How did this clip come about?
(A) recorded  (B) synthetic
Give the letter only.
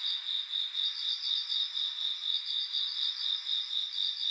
A